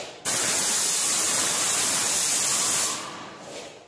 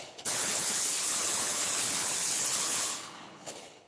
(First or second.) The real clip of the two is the first